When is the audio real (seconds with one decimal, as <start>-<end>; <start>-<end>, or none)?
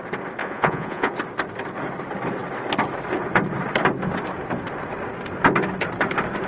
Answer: 0.0-0.4; 1.1-6.5